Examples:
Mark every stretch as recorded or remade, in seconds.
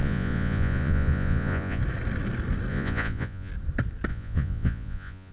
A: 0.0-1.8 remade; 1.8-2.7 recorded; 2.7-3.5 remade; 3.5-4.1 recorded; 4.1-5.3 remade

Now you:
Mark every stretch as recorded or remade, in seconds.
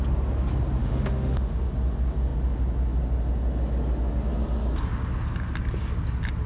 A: 0.0-0.8 recorded; 0.8-1.6 remade; 1.6-6.5 recorded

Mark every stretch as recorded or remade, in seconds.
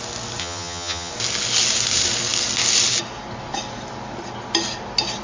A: 0.0-0.4 recorded; 0.4-1.1 remade; 1.1-5.2 recorded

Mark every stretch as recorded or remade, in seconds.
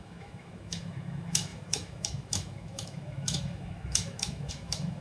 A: 0.0-5.0 remade